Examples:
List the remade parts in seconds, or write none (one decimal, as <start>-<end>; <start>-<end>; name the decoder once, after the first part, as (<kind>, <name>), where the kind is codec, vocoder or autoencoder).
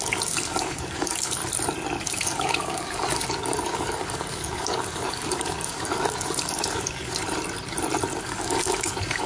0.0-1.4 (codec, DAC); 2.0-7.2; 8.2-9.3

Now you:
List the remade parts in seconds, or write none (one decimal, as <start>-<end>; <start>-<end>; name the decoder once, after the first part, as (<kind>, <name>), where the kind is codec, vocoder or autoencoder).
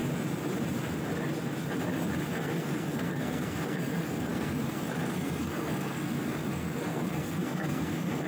2.3-8.3 (codec, SNAC)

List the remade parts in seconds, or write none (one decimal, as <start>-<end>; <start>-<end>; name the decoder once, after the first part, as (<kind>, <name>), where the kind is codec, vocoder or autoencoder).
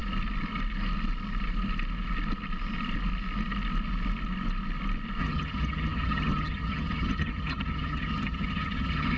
5.2-9.2 (vocoder, HiFi-GAN)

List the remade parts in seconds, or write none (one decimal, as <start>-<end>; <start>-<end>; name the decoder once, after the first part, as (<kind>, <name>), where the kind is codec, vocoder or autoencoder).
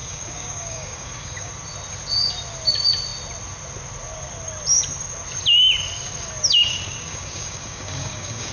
0.0-1.5 (codec, DAC); 6.7-8.5